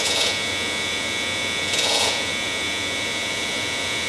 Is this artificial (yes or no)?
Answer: yes